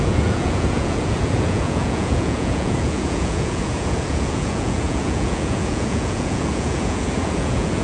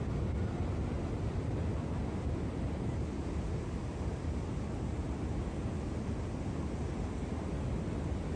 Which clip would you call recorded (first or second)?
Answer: second